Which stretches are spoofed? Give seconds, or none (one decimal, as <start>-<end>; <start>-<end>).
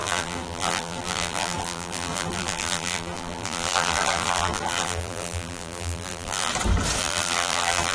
0.0-6.5; 7.0-7.9